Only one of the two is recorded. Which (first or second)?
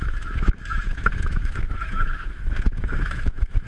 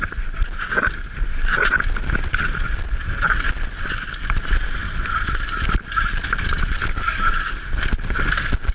second